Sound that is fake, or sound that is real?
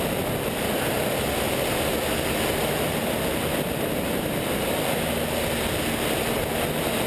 real